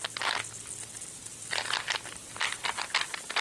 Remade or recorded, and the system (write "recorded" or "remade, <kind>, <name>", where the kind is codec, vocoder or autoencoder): recorded